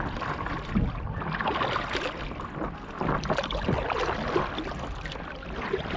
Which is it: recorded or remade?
recorded